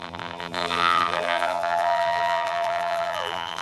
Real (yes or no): no